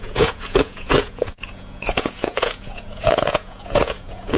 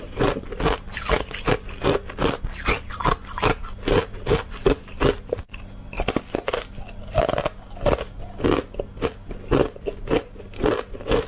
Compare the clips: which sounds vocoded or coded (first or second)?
first